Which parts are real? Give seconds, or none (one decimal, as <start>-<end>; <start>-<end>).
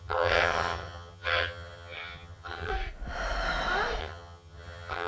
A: 2.7-4.0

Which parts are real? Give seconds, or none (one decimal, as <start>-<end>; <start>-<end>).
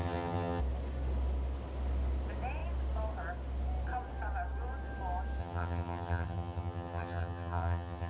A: 0.6-5.4